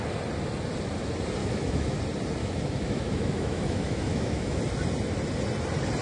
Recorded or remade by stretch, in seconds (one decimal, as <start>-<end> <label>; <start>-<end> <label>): 0.0-1.4 recorded; 1.4-2.0 remade; 2.0-2.4 recorded; 2.4-4.6 remade; 4.6-6.0 recorded